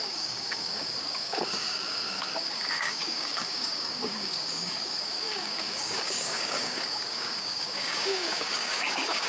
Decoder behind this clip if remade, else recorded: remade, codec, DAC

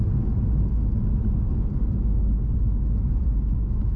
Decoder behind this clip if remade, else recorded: recorded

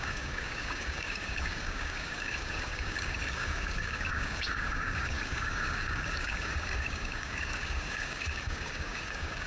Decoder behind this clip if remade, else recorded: remade, codec, DAC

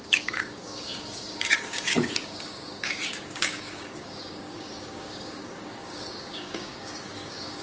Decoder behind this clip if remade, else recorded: remade, codec, DAC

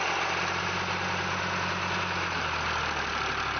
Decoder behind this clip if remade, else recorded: recorded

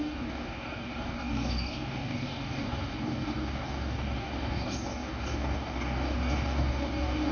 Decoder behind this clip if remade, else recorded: remade, codec, DAC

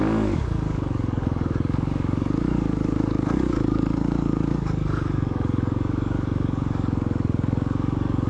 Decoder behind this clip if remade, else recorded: remade, codec, DAC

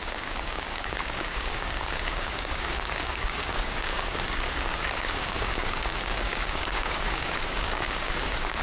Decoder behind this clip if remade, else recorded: remade, codec, DAC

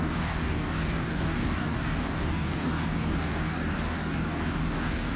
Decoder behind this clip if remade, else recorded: remade, codec, DAC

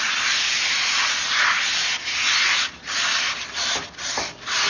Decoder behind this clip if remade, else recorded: recorded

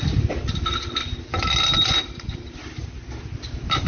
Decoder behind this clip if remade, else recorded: recorded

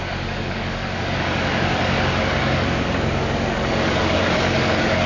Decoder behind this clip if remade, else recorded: remade, codec, DAC